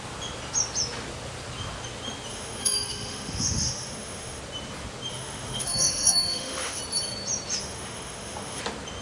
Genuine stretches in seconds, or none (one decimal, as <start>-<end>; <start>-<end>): 0.0-2.3; 4.4-5.1; 6.8-7.6; 8.6-9.0